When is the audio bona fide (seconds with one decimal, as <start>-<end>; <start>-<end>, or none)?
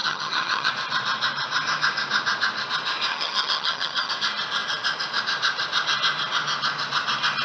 0.7-3.1; 4.1-7.4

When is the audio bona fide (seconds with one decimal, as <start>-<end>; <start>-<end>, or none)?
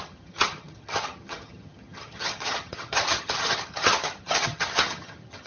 none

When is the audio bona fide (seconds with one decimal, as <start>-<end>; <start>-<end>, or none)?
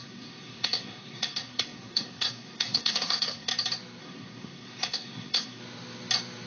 3.5-4.0; 5.6-6.5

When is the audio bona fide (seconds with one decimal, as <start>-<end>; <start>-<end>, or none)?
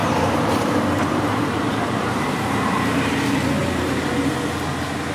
3.1-3.6; 4.1-5.1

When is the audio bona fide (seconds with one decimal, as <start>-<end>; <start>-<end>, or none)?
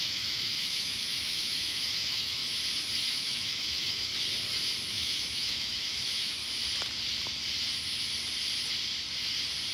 2.4-3.1; 4.1-4.9; 6.4-9.7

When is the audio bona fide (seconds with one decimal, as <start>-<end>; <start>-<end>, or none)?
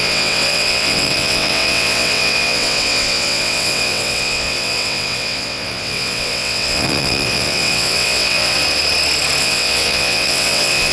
8.6-9.4